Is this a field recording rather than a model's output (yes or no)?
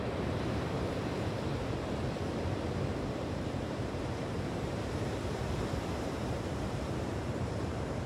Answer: no